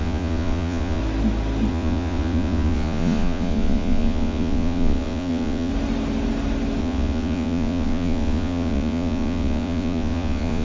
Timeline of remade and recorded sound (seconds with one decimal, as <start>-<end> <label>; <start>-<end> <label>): 0.0-1.0 remade; 1.0-1.7 recorded; 1.7-5.7 remade; 5.7-6.8 recorded; 6.8-10.6 remade